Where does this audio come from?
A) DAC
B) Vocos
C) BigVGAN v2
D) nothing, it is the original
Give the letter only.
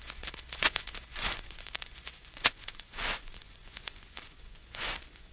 B